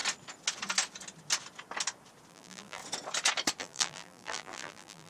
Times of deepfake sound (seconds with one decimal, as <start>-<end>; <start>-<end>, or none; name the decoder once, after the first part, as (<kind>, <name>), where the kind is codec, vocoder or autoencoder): 2.3-2.8 (vocoder, BigVGAN v2); 3.6-5.1